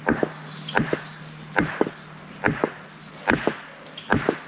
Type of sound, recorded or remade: recorded